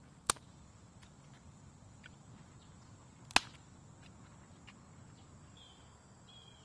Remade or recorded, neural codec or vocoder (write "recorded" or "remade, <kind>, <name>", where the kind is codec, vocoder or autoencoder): recorded